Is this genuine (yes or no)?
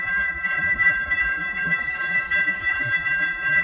no